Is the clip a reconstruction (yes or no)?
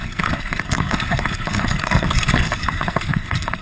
yes